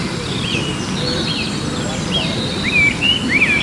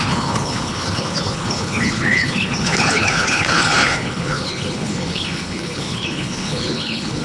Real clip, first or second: first